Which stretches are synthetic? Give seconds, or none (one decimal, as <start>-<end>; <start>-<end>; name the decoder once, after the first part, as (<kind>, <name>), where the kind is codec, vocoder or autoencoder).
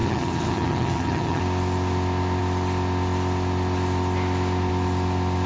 0.0-1.4 (vocoder, HiFi-GAN)